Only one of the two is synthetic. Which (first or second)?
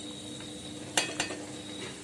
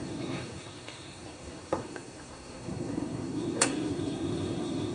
second